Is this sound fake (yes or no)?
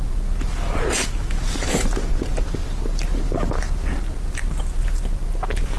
no